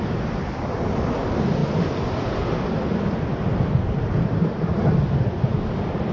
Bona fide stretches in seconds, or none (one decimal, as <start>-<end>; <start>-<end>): 0.0-6.1